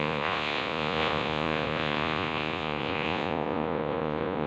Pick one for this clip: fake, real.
fake